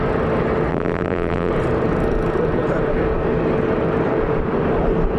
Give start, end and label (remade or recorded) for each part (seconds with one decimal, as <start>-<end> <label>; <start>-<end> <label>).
0.0-0.7 recorded; 0.7-1.5 remade; 1.5-5.2 recorded